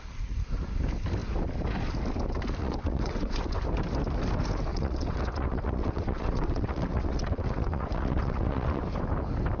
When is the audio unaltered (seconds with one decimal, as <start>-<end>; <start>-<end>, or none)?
0.0-2.6; 3.6-4.7; 8.8-9.6

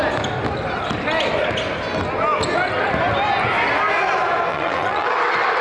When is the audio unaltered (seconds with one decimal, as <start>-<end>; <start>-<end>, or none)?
0.0-4.5

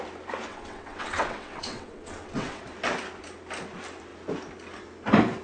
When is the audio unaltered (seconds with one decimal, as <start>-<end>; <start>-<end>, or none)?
0.0-0.5; 2.6-5.4